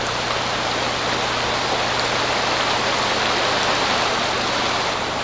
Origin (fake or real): real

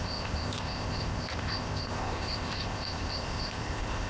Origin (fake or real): fake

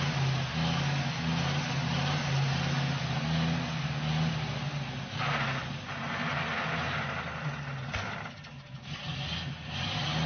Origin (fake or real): real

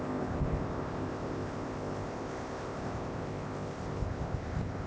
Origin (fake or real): fake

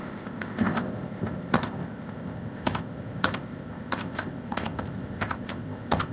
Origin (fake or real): fake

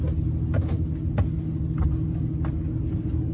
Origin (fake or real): real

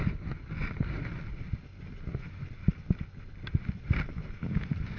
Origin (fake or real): real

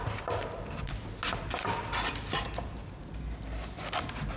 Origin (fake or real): real